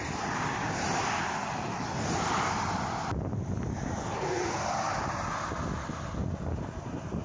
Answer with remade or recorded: recorded